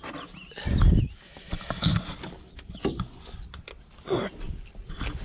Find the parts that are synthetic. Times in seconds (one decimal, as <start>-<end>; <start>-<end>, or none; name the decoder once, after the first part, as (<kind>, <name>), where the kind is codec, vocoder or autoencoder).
none